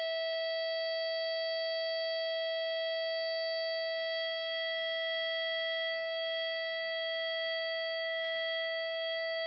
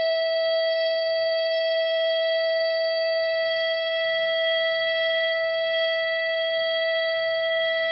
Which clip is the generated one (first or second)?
second